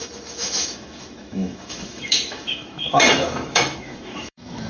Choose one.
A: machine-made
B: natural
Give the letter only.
A